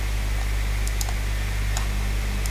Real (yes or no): yes